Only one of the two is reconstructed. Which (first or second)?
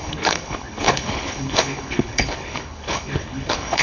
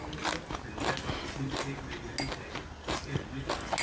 first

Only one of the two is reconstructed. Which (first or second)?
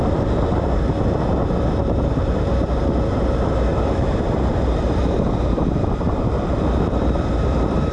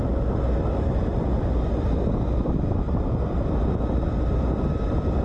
first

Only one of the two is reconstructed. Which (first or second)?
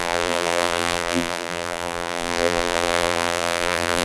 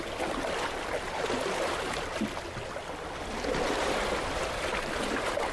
first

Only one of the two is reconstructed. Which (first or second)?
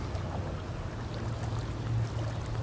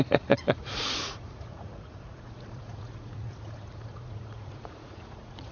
second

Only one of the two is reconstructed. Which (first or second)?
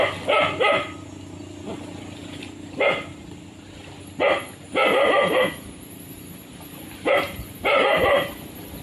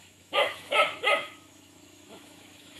second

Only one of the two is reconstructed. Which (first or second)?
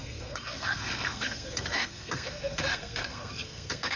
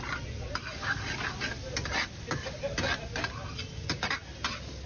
first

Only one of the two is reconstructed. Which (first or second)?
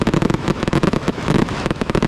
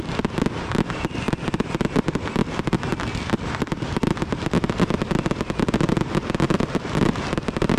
first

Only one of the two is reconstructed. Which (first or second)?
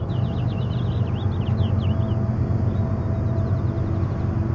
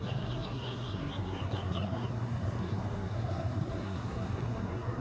second